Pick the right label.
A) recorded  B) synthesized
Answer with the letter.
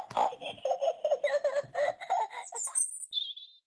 A